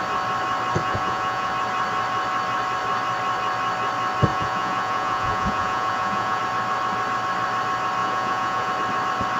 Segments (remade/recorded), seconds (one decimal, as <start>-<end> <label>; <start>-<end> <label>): 0.0-0.8 recorded; 0.8-1.5 remade; 1.5-4.3 recorded; 4.3-6.4 remade; 6.4-8.0 recorded; 8.0-8.7 remade; 8.7-9.4 recorded